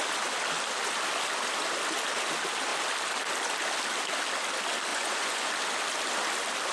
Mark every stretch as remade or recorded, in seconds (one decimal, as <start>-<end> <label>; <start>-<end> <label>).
0.0-4.9 recorded; 4.9-5.5 remade; 5.5-6.7 recorded